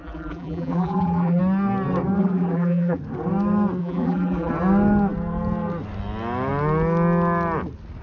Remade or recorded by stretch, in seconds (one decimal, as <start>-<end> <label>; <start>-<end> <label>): 0.0-1.4 remade; 1.4-2.2 recorded; 2.2-3.0 remade; 3.0-3.8 recorded; 3.8-4.5 remade; 4.5-8.0 recorded